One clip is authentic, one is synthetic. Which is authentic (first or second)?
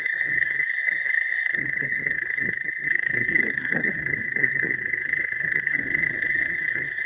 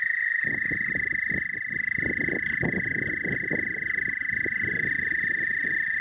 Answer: second